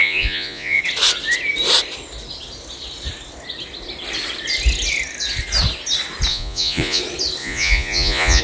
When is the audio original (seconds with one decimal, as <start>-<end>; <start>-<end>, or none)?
0.8-6.3; 7.0-7.4